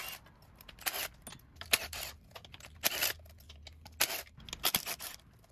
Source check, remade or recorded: recorded